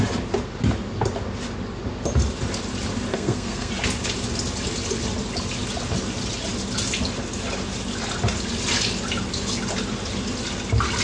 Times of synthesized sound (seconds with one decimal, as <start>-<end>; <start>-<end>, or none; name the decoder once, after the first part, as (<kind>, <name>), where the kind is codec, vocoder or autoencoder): 3.1-3.7 (codec, SNAC)